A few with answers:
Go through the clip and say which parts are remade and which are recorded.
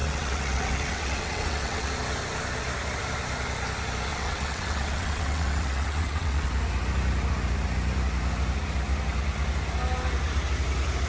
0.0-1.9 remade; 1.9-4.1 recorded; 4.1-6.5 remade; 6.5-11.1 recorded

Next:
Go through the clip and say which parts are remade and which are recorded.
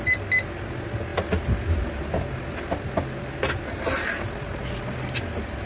0.0-5.7 recorded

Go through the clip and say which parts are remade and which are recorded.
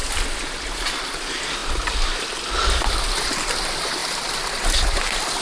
0.0-5.4 recorded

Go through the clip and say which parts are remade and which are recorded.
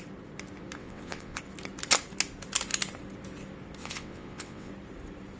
0.0-0.8 recorded; 0.8-1.4 remade; 1.4-3.8 recorded; 3.8-4.7 remade; 4.7-5.4 recorded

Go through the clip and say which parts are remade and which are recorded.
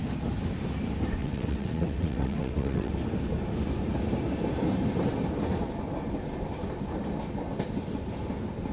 0.0-1.2 recorded; 1.2-2.9 remade; 2.9-8.7 recorded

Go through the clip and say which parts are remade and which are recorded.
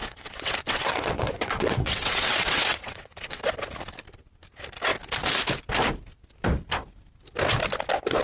0.0-3.4 remade; 3.4-8.2 recorded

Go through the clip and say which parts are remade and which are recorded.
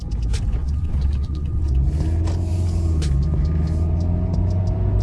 0.0-0.6 recorded; 0.6-1.7 remade; 1.7-5.0 recorded